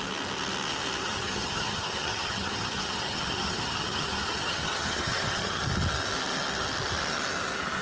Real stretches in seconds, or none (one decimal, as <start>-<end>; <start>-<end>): 0.0-1.0; 5.6-7.8